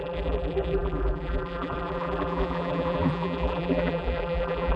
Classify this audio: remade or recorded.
remade